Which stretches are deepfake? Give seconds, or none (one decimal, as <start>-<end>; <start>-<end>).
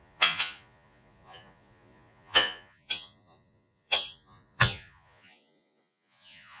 0.0-6.6